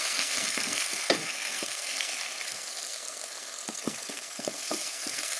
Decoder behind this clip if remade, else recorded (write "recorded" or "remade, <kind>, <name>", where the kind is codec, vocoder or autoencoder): remade, codec, SNAC